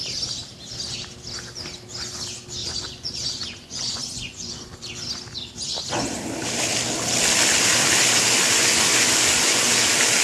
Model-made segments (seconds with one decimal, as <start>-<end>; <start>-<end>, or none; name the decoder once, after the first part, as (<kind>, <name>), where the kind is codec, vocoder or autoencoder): 2.6-4.9 (vocoder, Vocos); 8.5-9.7